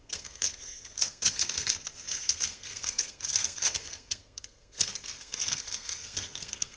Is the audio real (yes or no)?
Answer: no